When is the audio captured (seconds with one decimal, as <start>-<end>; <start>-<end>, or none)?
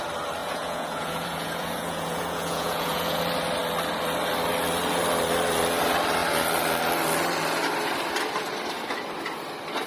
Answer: 0.0-0.4; 3.2-9.9